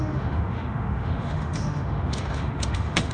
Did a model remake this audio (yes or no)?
yes